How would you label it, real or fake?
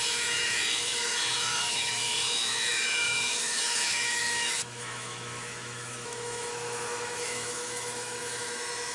fake